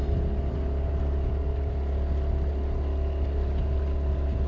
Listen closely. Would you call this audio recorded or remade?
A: recorded